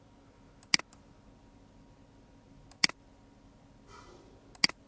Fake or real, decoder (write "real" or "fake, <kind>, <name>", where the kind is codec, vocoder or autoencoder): real